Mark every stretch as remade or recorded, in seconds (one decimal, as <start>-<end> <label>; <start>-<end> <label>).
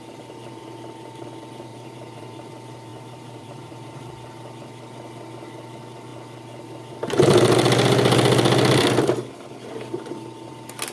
0.0-1.7 recorded; 1.7-2.5 remade; 2.5-2.9 recorded; 2.9-4.1 remade; 4.1-10.9 recorded